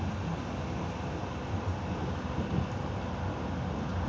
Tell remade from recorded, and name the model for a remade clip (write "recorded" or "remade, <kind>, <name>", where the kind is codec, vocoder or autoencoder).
recorded